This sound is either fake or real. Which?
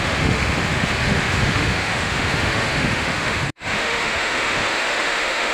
fake